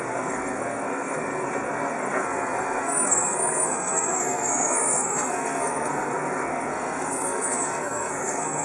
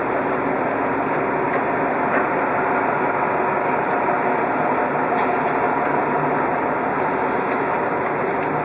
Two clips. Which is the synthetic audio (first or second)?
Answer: first